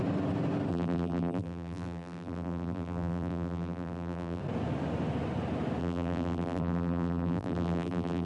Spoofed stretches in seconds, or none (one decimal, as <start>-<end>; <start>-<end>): 0.7-4.4; 5.8-8.3